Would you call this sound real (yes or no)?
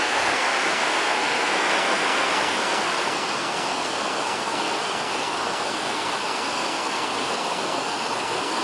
no